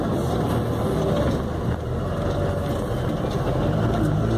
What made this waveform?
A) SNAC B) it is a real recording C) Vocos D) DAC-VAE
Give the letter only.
B